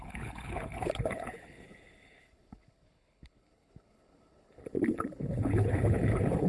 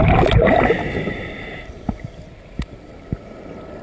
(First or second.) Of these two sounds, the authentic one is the second